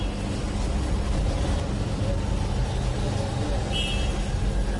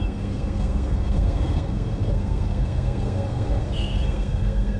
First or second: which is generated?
second